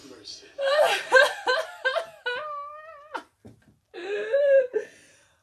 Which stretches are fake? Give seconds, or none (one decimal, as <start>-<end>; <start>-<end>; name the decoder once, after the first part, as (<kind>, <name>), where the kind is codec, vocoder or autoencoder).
0.7-1.9 (vocoder, BigVGAN v2); 4.6-5.4